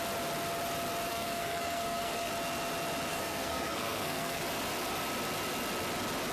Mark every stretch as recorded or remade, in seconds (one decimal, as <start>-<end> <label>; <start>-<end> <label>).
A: 0.0-1.1 recorded; 1.1-2.3 remade; 2.3-3.1 recorded; 3.1-4.4 remade; 4.4-6.3 recorded